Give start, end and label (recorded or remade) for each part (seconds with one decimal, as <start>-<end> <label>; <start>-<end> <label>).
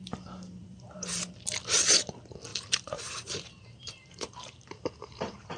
0.0-0.6 recorded; 0.6-1.3 remade; 1.3-2.5 recorded; 2.5-5.6 remade